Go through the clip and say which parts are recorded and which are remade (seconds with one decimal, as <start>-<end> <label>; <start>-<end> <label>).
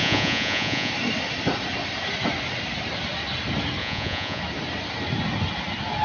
0.0-0.9 remade; 0.9-3.8 recorded; 3.8-4.4 remade; 4.4-6.0 recorded